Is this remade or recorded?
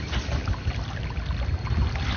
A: recorded